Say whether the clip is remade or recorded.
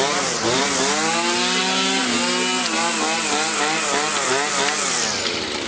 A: recorded